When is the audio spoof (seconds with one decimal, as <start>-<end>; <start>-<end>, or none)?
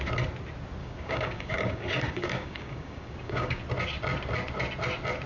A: 0.8-3.6